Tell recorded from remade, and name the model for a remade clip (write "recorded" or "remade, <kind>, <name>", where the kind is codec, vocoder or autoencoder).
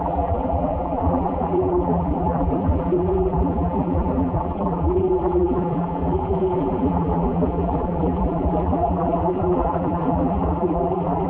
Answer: remade, vocoder, BigVGAN v2